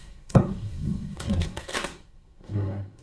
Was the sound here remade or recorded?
remade